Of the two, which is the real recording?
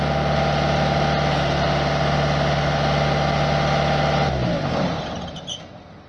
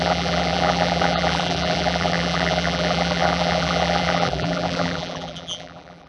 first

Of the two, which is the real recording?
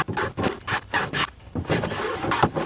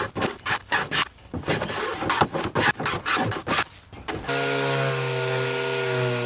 second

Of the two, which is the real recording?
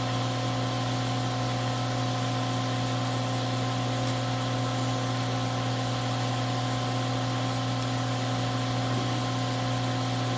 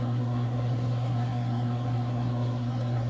first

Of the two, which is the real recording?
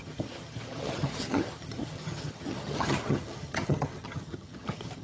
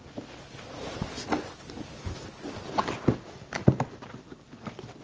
second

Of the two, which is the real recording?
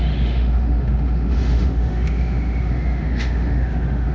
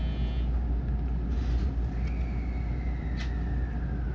second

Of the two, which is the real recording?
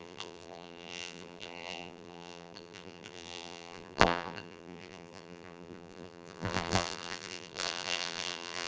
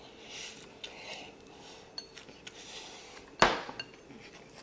second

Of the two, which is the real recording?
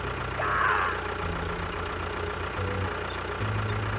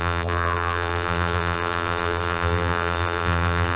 first